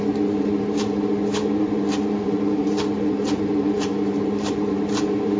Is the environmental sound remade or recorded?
remade